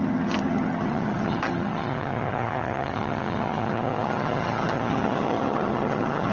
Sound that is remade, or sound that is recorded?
remade